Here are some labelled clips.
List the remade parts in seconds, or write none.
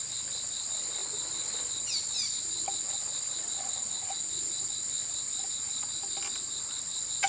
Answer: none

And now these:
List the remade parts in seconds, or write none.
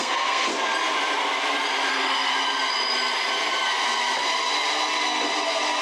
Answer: 0.0-0.5; 1.9-2.3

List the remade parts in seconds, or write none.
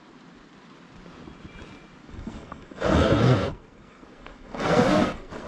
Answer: 2.0-5.5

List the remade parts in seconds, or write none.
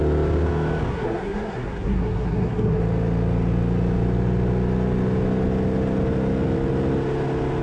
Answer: 0.9-2.8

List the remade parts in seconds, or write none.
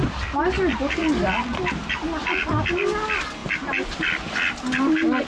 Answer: none